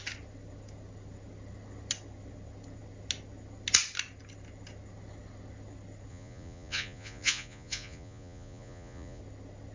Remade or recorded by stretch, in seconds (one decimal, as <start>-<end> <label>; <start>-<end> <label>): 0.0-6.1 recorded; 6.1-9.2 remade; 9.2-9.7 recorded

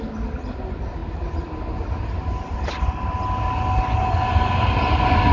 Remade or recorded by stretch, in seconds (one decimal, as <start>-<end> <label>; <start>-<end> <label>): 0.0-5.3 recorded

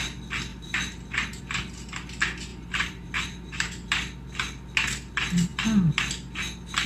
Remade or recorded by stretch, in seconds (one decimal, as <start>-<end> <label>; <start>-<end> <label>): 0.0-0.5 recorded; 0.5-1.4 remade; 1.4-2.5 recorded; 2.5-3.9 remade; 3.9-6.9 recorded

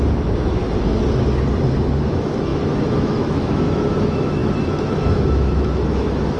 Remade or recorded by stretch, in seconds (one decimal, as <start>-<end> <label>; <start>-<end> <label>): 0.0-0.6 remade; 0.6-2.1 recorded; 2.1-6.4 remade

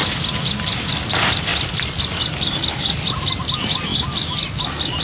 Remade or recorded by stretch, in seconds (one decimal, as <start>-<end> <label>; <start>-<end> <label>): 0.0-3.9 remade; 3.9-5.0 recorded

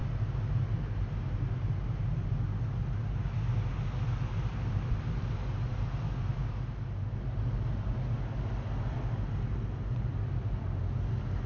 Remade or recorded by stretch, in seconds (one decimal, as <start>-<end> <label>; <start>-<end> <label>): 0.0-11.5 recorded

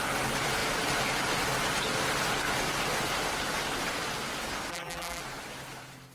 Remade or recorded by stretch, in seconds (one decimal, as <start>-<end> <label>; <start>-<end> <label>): 0.0-4.7 recorded; 4.7-5.2 remade; 5.2-6.1 recorded

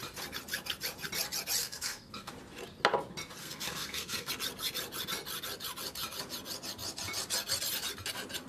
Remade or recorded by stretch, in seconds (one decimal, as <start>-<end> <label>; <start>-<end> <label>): 0.0-1.6 recorded; 1.6-2.3 remade; 2.3-3.4 recorded; 3.4-4.3 remade; 4.3-8.5 recorded